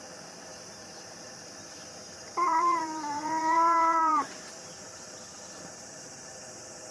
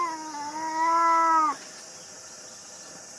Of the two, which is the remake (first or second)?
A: first